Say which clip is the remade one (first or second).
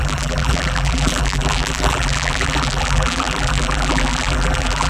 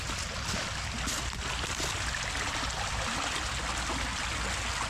first